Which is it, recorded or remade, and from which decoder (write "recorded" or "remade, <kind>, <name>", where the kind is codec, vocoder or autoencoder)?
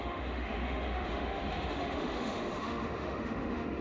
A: remade, autoencoder, DAC-VAE